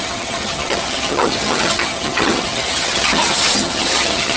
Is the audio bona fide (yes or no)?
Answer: no